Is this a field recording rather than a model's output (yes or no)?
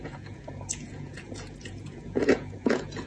no